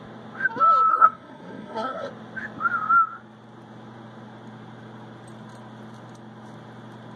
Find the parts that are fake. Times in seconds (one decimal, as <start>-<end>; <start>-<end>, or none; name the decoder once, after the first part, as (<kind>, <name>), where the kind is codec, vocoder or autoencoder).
0.9-2.1 (codec, SNAC)